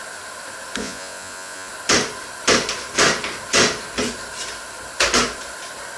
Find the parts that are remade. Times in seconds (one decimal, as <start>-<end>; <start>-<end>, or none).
0.8-1.7